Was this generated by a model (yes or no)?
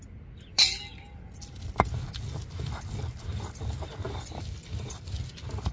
no